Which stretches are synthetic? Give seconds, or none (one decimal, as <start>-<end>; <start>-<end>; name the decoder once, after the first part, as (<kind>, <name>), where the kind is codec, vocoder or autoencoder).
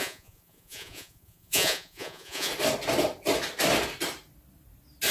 0.0-2.5 (vocoder, Vocos)